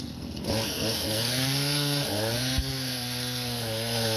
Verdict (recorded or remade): remade